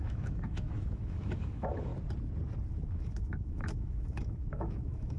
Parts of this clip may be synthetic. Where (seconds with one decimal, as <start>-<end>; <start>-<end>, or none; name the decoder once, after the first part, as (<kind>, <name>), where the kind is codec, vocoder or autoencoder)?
0.0-1.9 (autoencoder, DAC-VAE); 2.7-5.2